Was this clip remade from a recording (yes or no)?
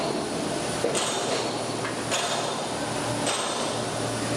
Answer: no